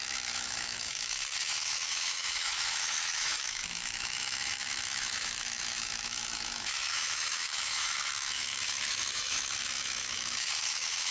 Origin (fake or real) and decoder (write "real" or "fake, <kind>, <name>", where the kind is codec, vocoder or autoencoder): fake, autoencoder, DAC-VAE